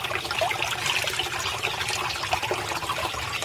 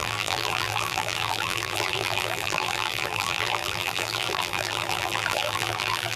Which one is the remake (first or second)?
second